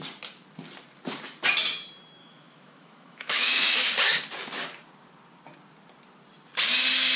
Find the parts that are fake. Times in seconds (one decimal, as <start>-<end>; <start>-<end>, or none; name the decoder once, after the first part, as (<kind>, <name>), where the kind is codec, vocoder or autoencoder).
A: 2.2-3.9 (autoencoder, DAC-VAE)